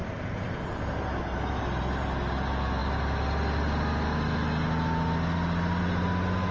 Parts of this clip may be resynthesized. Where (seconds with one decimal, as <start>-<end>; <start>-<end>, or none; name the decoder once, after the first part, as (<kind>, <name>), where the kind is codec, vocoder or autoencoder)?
none